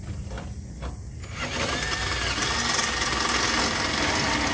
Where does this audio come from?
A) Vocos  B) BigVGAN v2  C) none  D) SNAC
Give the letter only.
C